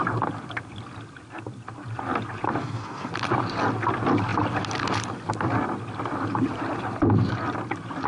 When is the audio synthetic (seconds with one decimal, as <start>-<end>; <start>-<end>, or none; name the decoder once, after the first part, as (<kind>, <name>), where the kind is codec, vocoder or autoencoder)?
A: 2.6-3.1 (codec, SNAC)